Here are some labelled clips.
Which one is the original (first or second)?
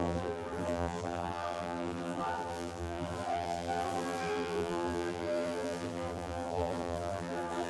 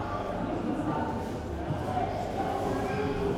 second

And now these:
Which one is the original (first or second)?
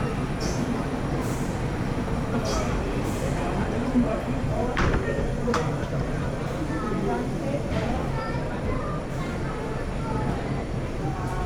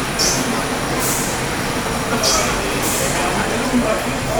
second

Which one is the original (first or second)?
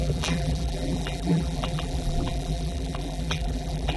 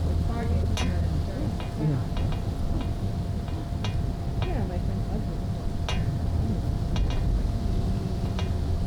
second